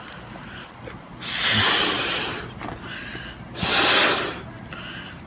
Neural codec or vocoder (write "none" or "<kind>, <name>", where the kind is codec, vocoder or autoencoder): none